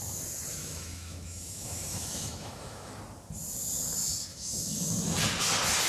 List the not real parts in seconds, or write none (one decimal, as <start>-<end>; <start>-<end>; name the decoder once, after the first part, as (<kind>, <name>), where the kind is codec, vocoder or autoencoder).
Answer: 0.6-2.9 (autoencoder, DAC-VAE); 4.3-4.9